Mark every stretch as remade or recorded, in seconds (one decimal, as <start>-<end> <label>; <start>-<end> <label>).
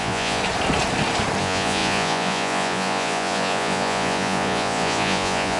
0.0-0.4 remade; 0.4-1.4 recorded; 1.4-5.6 remade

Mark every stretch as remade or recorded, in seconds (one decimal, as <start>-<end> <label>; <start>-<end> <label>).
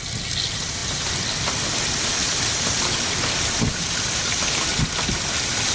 0.0-5.7 recorded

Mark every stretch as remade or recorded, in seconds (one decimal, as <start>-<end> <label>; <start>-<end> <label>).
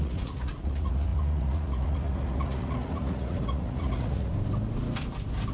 0.0-4.3 remade; 4.3-5.5 recorded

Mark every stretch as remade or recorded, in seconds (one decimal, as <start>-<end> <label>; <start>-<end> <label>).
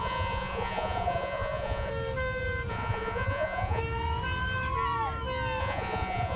0.0-1.9 remade; 1.9-2.7 recorded; 2.7-3.8 remade; 3.8-5.6 recorded; 5.6-6.4 remade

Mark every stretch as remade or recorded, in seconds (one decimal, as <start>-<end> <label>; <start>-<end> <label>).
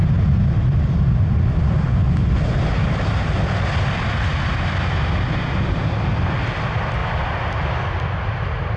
0.0-8.8 recorded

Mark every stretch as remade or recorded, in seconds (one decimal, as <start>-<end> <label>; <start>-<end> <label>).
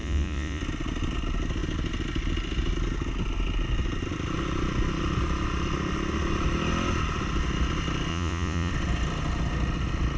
0.0-0.6 remade; 0.6-8.1 recorded; 8.1-8.7 remade; 8.7-10.2 recorded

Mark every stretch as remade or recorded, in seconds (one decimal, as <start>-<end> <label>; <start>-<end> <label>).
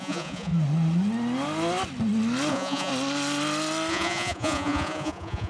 0.0-0.5 remade; 0.5-2.5 recorded; 2.5-2.9 remade; 2.9-3.9 recorded; 3.9-5.5 remade